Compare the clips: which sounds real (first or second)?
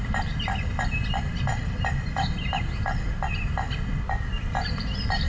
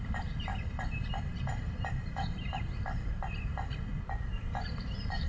first